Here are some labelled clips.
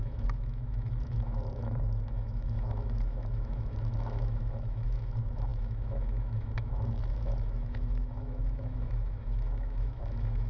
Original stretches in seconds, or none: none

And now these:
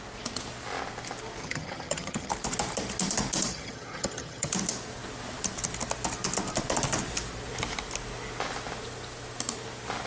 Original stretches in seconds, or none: 0.0-1.4; 2.3-3.5; 4.5-10.1

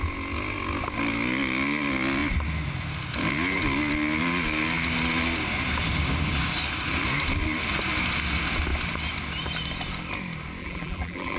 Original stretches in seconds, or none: 0.0-10.6

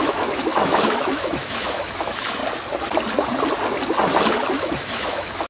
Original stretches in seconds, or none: 2.4-4.6

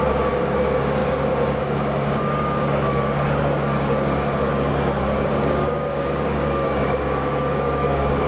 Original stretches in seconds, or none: 4.5-5.0

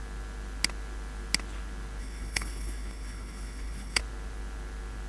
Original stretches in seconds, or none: 0.0-2.0; 4.0-5.1

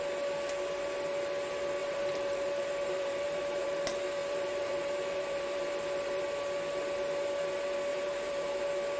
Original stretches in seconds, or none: 0.0-1.8; 3.8-4.2; 6.2-7.9; 8.6-9.0